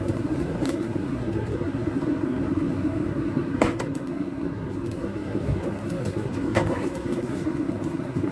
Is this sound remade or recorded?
remade